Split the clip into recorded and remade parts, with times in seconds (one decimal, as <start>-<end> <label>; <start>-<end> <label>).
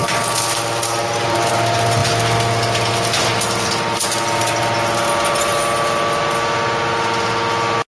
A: 0.0-7.9 recorded